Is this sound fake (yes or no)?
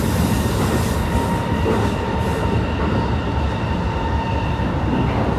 no